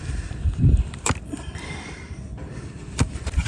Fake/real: fake